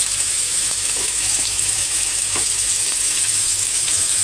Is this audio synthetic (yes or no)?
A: yes